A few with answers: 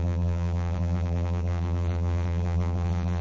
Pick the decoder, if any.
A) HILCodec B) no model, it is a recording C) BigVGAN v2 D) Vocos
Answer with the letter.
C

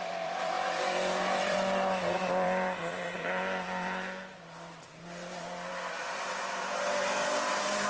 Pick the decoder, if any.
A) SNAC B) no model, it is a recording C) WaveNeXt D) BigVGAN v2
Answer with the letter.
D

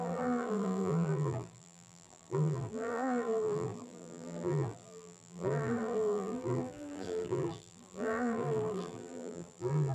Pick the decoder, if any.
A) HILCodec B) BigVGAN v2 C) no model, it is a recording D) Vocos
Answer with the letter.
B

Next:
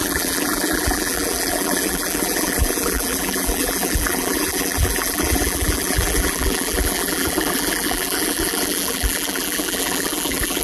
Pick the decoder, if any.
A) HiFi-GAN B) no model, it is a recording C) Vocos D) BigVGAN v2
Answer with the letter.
D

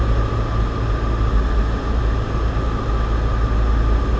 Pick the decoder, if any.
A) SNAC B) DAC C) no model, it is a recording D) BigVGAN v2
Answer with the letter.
C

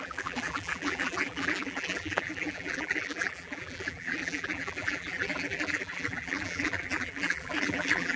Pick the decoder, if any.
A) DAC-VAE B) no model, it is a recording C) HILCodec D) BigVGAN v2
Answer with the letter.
D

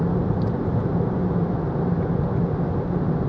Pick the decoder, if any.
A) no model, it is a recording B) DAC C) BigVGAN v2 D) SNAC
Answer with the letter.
A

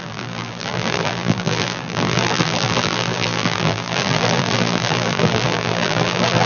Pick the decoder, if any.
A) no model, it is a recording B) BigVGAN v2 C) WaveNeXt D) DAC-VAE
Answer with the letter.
B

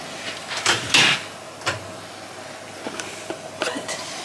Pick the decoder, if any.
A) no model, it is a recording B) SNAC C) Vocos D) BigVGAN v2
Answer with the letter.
A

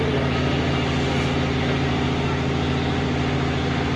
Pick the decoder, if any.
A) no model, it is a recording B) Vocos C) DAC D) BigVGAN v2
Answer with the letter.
A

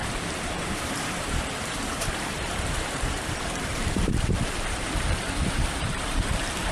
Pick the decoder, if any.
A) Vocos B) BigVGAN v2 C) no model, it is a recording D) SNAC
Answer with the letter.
B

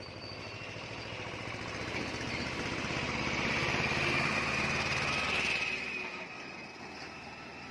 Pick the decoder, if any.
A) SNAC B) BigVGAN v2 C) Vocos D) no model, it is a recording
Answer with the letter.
D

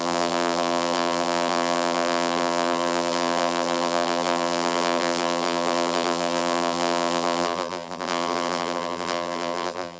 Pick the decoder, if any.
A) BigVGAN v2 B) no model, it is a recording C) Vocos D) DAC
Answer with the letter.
A